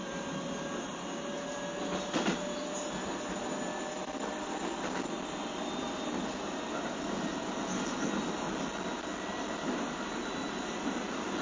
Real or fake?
real